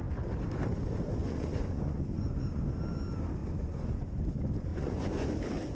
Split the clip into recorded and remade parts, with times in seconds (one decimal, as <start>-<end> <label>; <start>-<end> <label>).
0.0-1.2 recorded; 1.2-2.6 remade; 2.6-3.4 recorded; 3.4-4.1 remade; 4.1-4.7 recorded; 4.7-5.3 remade; 5.3-5.7 recorded